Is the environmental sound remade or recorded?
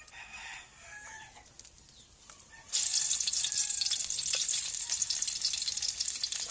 recorded